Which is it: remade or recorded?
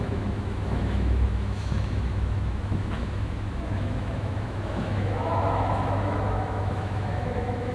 remade